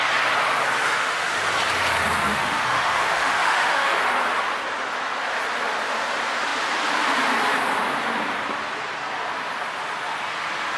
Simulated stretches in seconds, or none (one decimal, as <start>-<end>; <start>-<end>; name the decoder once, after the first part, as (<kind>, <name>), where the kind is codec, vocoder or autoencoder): 0.8-1.4 (autoencoder, DAC-VAE); 2.3-4.0